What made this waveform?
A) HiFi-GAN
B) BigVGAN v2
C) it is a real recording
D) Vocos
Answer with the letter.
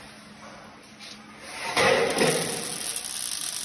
C